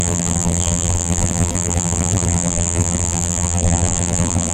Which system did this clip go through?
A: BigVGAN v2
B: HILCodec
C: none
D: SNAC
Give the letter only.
A